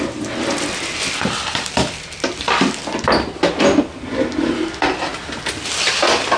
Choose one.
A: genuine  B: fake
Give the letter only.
A